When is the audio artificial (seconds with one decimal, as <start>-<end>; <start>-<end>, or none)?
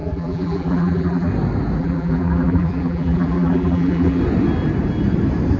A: 0.0-1.3; 1.8-4.2